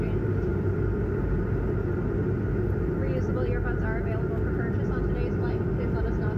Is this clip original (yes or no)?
yes